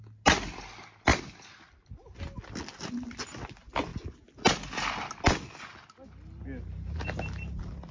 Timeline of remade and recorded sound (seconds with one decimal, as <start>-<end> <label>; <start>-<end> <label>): 0.0-7.9 recorded